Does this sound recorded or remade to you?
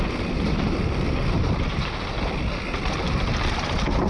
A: recorded